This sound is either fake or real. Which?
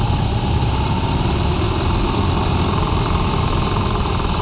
real